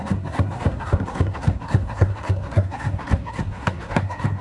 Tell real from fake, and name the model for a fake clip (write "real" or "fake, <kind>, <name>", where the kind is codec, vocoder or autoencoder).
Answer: fake, codec, SNAC